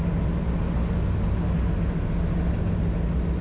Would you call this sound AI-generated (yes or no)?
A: no